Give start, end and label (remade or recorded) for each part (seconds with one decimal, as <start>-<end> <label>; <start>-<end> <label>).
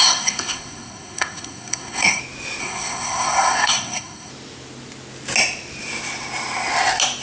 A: 0.0-2.2 remade; 2.2-2.6 recorded; 2.6-4.3 remade; 4.3-7.2 recorded